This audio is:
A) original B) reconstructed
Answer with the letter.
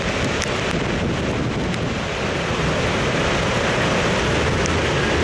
A